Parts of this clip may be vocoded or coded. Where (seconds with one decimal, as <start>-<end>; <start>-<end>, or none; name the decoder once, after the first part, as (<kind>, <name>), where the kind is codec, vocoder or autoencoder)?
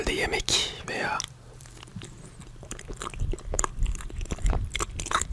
1.9-5.3 (vocoder, BigVGAN v2)